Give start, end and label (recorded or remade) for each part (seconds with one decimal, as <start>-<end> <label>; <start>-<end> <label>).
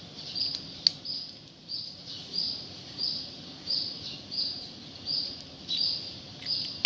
0.0-1.6 recorded; 1.6-5.3 remade; 5.3-6.9 recorded